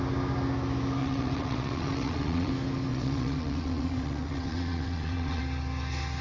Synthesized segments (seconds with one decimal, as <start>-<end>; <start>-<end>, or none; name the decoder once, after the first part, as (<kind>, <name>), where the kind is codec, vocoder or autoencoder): 1.0-2.5 (vocoder, WaveNeXt); 2.9-5.4